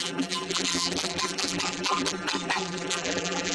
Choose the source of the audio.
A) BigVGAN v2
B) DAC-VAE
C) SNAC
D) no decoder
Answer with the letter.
A